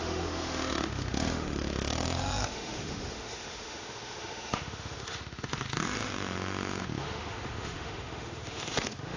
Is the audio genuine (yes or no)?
no